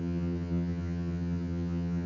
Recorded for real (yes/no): no